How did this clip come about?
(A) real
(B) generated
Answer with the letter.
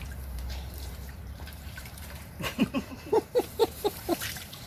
B